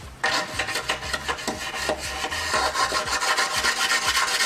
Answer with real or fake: real